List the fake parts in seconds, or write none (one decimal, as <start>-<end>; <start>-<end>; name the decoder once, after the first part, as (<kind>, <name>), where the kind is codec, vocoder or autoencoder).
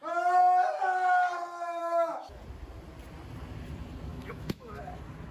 1.8-2.4 (autoencoder, DAC-VAE); 4.1-4.8